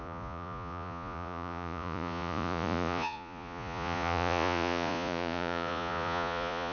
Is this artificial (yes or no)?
yes